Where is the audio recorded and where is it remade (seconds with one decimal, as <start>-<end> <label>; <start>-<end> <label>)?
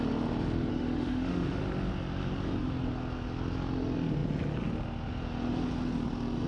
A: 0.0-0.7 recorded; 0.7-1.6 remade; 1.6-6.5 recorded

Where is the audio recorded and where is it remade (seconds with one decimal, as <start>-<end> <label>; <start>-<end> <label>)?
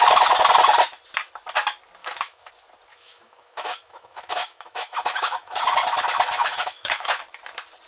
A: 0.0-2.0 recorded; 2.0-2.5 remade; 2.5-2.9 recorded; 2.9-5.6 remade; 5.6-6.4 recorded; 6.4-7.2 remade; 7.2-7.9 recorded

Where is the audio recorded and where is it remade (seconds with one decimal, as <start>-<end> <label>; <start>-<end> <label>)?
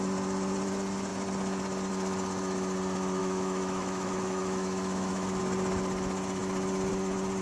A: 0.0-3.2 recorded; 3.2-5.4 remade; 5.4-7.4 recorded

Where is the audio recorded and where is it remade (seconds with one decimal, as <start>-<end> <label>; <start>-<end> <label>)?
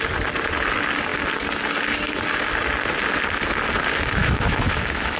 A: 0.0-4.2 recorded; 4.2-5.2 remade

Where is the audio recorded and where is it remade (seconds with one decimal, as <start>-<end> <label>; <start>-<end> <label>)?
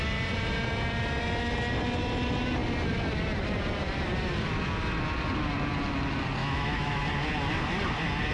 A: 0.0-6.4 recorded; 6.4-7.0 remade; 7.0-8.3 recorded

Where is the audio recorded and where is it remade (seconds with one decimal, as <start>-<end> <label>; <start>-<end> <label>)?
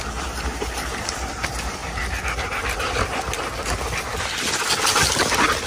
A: 0.0-5.7 recorded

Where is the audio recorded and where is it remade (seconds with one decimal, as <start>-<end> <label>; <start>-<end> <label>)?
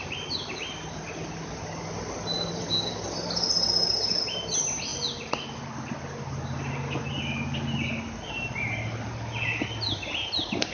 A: 0.0-10.7 recorded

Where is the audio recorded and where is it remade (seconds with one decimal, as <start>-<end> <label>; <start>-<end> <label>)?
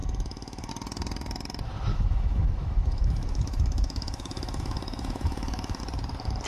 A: 0.0-0.7 remade; 0.7-1.9 recorded; 1.9-5.8 remade; 5.8-6.5 recorded